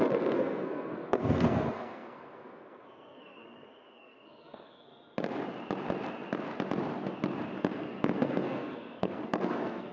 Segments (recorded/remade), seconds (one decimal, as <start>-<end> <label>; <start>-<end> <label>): 0.0-4.9 remade; 4.9-7.6 recorded; 7.6-9.9 remade

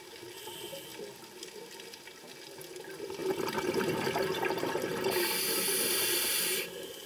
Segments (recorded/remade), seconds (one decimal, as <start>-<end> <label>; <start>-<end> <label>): 0.0-7.1 recorded

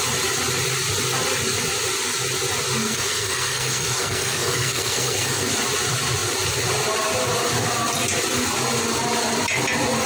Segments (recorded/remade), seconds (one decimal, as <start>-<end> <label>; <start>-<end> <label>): 0.0-2.8 recorded; 2.8-5.5 remade; 5.5-10.1 recorded

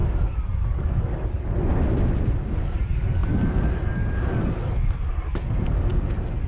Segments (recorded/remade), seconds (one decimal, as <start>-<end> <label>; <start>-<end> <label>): 0.0-6.5 recorded

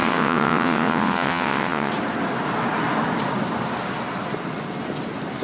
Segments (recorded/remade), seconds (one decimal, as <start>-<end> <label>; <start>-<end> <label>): 0.0-1.9 remade; 1.9-5.4 recorded

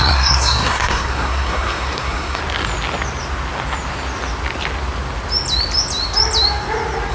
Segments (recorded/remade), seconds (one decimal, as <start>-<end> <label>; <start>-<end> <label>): 0.0-2.4 remade; 2.4-7.1 recorded

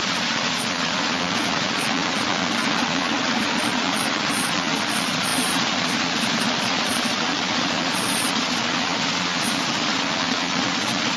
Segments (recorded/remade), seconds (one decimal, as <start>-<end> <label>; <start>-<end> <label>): 0.0-11.2 remade

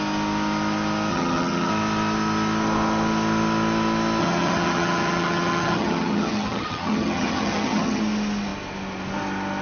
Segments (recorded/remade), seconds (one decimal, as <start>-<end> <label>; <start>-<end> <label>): 0.0-1.1 recorded; 1.1-1.7 remade; 1.7-4.2 recorded; 4.2-8.0 remade; 8.0-9.6 recorded